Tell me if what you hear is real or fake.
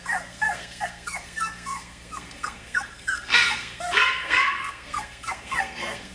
fake